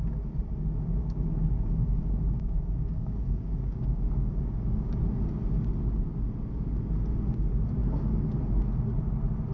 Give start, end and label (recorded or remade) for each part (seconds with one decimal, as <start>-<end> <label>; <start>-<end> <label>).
0.0-1.0 recorded; 1.0-5.0 remade; 5.0-9.5 recorded